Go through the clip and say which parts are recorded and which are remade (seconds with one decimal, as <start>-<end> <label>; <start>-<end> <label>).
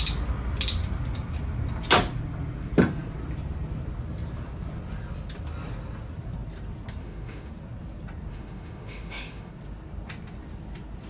0.0-7.0 recorded; 7.0-7.5 remade; 7.5-8.3 recorded; 8.3-9.5 remade; 9.5-11.1 recorded